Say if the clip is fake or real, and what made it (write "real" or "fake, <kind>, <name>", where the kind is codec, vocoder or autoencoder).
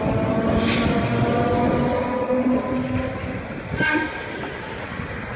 real